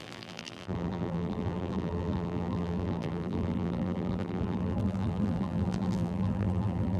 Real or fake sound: fake